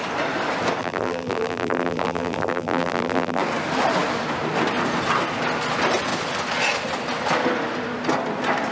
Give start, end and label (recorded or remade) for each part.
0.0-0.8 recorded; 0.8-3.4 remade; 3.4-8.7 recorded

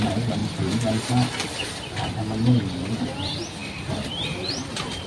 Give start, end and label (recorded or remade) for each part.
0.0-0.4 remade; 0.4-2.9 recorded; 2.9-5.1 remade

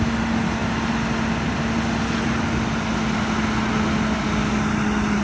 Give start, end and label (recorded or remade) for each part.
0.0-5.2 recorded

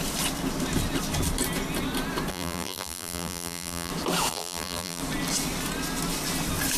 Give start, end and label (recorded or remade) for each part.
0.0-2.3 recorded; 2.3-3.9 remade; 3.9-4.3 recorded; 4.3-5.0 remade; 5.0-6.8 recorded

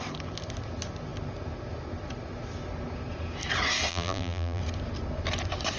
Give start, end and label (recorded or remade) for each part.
0.0-3.9 recorded; 3.9-4.6 remade; 4.6-5.8 recorded